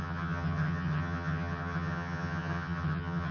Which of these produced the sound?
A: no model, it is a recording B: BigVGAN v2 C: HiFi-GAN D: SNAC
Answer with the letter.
C